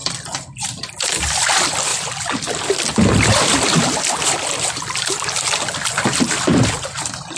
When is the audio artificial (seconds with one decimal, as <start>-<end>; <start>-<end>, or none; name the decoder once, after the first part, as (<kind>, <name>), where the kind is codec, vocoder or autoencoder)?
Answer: none